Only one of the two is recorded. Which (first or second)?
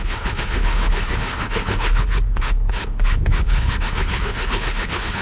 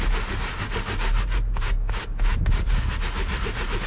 second